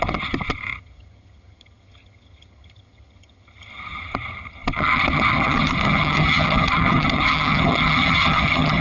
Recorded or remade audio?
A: remade